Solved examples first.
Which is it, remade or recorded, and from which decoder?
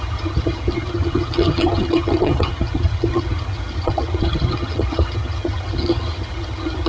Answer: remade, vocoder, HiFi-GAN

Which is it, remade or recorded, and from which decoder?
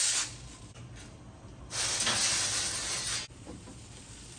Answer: recorded